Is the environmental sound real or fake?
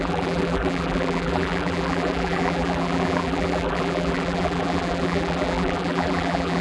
fake